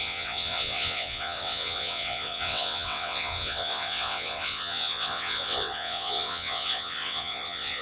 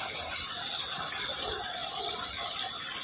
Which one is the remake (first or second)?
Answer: first